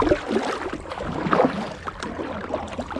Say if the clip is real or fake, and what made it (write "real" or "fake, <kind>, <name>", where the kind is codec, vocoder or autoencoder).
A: real